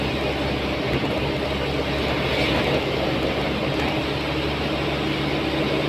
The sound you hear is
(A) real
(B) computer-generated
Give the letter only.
A